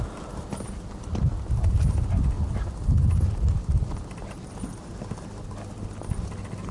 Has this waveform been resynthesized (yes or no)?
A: no